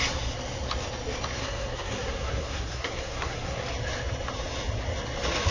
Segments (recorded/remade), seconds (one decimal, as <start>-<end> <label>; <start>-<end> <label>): 0.0-1.4 recorded; 1.4-3.6 remade; 3.6-5.5 recorded